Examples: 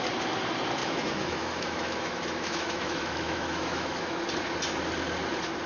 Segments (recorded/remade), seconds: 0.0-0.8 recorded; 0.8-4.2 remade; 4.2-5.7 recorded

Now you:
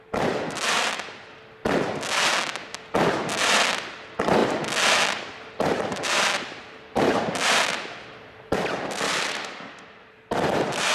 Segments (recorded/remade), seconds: 0.0-10.9 recorded

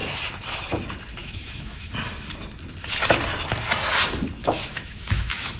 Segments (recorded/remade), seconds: 0.0-1.2 recorded; 1.2-1.9 remade; 1.9-4.4 recorded; 4.4-5.6 remade

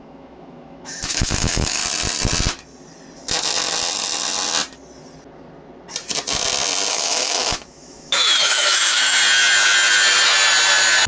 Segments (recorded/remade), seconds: 0.0-1.8 remade; 1.8-6.9 recorded; 6.9-9.2 remade; 9.2-11.1 recorded

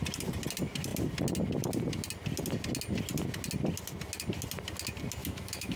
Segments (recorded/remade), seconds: 0.0-5.2 recorded; 5.2-5.8 remade

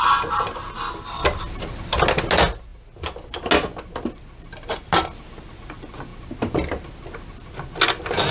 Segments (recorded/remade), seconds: 0.0-8.3 recorded

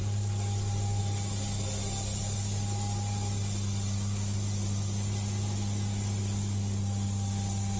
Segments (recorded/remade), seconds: 0.0-7.8 recorded

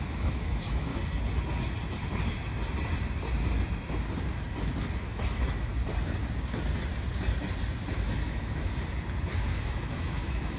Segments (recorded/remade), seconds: 0.0-0.9 remade; 0.9-5.0 recorded; 5.0-5.7 remade; 5.7-7.9 recorded; 7.9-8.7 remade; 8.7-9.6 recorded; 9.6-10.6 remade